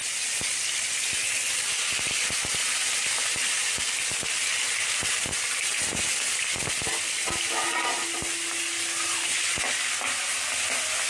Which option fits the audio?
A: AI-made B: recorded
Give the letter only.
B